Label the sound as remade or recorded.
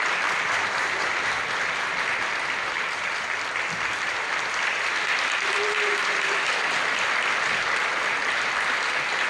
remade